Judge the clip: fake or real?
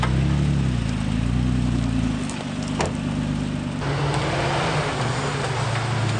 real